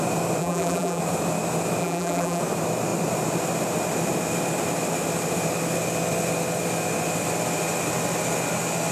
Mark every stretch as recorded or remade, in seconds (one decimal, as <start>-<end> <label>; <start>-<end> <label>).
0.0-0.4 recorded; 0.4-1.0 remade; 1.0-1.8 recorded; 1.8-2.4 remade; 2.4-8.9 recorded